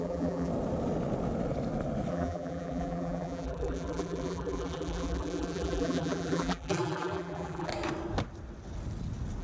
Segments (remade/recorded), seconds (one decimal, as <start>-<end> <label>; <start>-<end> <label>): 0.0-0.5 remade; 0.5-2.1 recorded; 2.1-7.7 remade; 7.7-9.4 recorded